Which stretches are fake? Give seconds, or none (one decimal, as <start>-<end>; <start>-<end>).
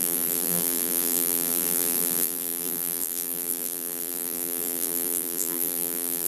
0.0-6.3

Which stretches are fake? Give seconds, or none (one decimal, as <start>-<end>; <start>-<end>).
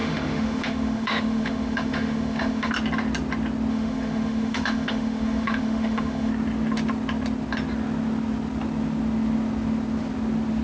0.0-2.7; 3.7-6.3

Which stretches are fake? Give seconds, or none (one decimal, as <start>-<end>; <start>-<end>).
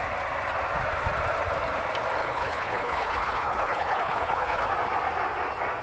2.2-4.7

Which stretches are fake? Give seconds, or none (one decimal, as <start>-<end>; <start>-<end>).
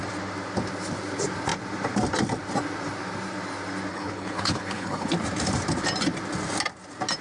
3.9-5.1